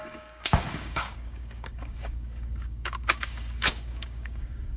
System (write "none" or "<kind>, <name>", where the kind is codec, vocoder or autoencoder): codec, DAC